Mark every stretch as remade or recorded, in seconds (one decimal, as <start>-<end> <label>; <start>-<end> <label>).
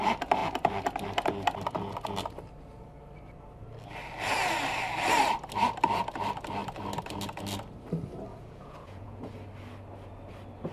0.0-8.3 recorded; 8.3-9.3 remade; 9.3-10.7 recorded